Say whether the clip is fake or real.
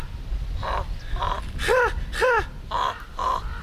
real